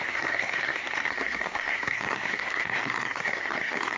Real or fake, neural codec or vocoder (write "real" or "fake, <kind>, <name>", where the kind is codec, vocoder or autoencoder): fake, codec, SNAC